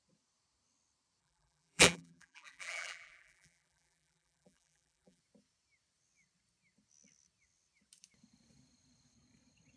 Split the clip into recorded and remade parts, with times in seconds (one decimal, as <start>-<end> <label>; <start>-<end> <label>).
0.0-1.2 recorded; 1.2-5.2 remade; 5.2-9.8 recorded